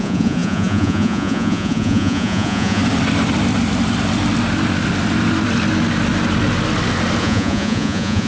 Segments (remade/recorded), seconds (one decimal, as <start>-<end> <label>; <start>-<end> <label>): 0.0-2.8 remade; 2.8-7.2 recorded; 7.2-8.3 remade